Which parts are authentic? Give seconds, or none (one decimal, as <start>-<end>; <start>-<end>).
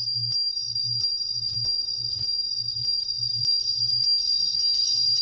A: 0.5-3.6